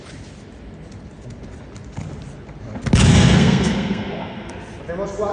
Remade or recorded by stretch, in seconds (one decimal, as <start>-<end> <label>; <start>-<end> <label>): 0.0-3.1 recorded; 3.1-4.5 remade; 4.5-5.3 recorded